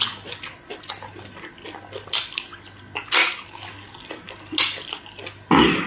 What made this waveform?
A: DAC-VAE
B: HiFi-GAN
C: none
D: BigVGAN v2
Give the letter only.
C